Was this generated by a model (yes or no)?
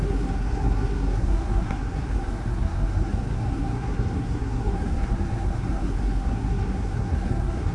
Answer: yes